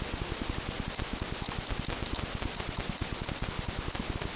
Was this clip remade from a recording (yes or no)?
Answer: no